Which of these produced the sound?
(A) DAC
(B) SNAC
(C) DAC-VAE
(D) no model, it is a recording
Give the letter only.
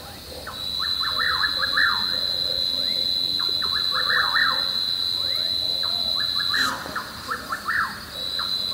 D